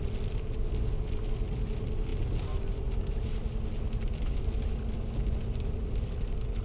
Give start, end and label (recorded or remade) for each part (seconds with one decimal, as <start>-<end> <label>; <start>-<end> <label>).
0.0-6.6 recorded